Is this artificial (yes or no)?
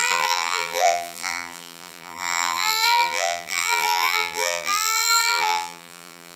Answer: yes